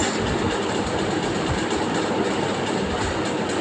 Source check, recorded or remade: recorded